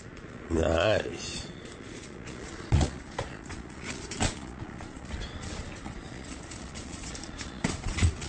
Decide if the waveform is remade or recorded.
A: remade